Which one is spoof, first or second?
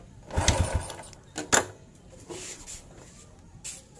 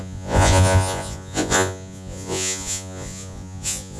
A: second